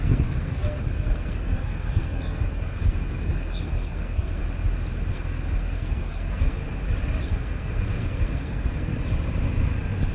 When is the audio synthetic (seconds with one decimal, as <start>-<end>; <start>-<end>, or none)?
0.0-4.4; 5.1-6.6; 7.2-8.9